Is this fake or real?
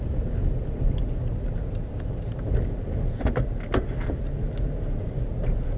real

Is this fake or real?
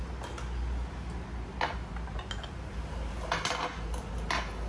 real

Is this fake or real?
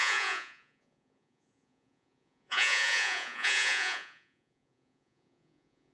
fake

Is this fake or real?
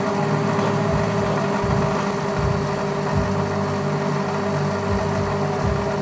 real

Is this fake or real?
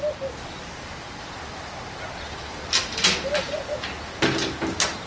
real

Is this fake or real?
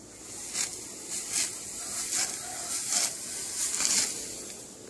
real